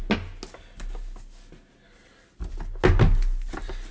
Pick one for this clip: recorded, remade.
recorded